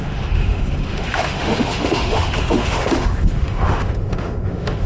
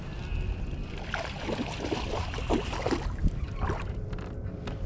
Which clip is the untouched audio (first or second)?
second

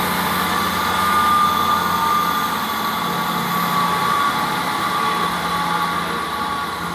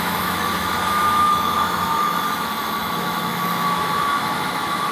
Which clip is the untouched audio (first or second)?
first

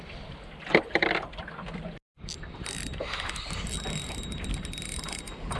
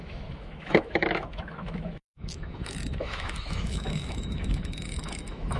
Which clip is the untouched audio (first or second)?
first